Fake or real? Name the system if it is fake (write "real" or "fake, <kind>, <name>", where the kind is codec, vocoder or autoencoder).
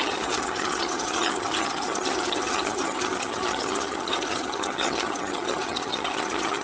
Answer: fake, vocoder, HiFi-GAN